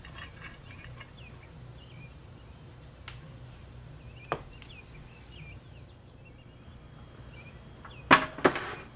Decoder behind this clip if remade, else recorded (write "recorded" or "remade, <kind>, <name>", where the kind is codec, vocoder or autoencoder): recorded